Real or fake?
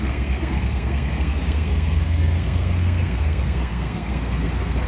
fake